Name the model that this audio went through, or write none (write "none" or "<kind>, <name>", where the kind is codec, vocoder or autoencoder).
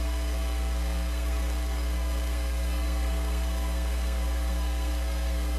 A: codec, SNAC